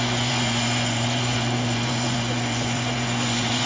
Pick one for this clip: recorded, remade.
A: remade